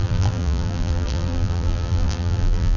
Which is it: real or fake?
fake